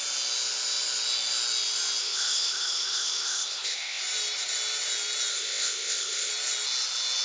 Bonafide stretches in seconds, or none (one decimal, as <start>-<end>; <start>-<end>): 0.0-2.0; 4.0-5.3; 6.3-7.2